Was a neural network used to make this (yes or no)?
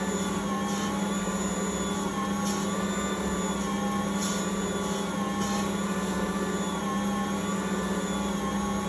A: no